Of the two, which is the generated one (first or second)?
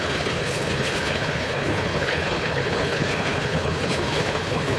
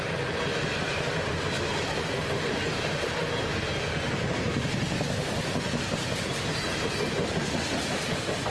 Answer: first